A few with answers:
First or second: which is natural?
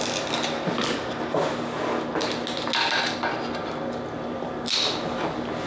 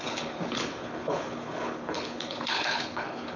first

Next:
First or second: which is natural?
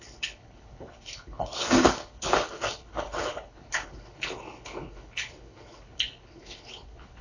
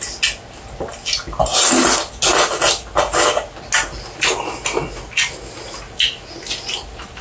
second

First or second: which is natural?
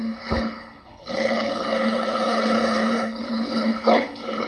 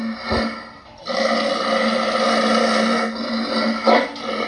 second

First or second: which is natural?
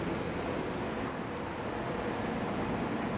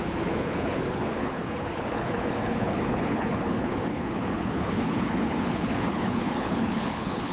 first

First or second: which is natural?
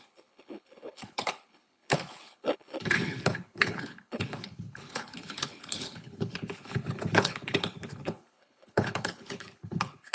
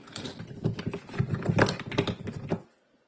second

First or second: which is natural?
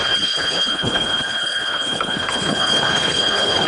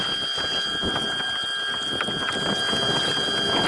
second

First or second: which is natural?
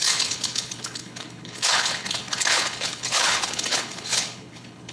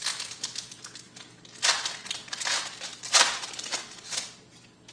second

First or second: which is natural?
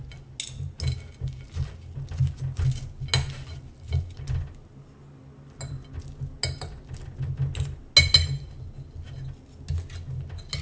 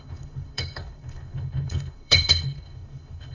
first